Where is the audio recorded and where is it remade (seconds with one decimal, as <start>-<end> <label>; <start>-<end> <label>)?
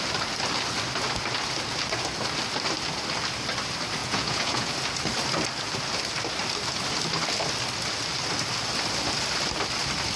0.0-4.0 recorded; 4.0-4.7 remade; 4.7-10.2 recorded